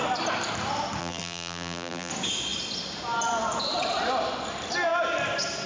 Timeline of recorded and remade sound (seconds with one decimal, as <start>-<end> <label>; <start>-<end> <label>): 0.0-1.0 recorded; 1.0-2.1 remade; 2.1-5.7 recorded